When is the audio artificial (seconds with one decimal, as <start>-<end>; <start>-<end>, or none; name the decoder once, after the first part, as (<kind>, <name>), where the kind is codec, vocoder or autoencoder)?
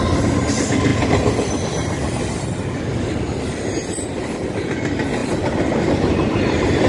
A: 0.9-2.8 (vocoder, BigVGAN v2); 5.2-6.9